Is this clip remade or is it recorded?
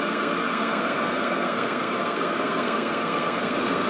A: remade